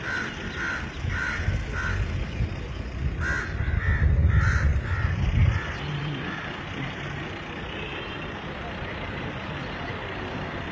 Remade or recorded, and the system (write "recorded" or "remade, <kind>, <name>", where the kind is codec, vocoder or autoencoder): recorded